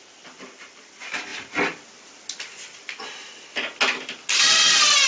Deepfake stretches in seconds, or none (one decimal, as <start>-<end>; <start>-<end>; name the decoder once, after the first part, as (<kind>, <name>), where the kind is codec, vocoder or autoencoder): none